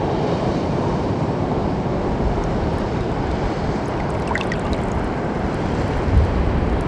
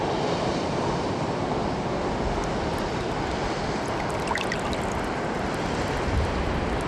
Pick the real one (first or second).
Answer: second